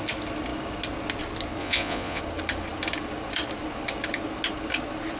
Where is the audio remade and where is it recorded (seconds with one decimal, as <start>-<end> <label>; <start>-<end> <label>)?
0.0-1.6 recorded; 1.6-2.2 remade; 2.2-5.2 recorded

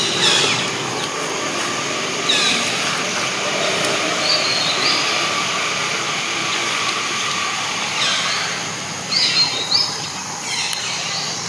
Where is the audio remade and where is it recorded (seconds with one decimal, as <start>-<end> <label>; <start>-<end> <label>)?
0.0-6.4 recorded; 6.4-6.9 remade; 6.9-11.5 recorded

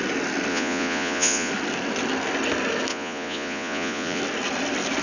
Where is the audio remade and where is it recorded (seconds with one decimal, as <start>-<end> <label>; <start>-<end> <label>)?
0.0-0.5 recorded; 0.5-1.5 remade; 1.5-2.9 recorded; 2.9-4.2 remade; 4.2-5.0 recorded